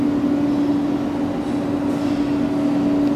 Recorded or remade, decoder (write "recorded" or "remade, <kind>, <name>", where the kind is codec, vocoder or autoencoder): recorded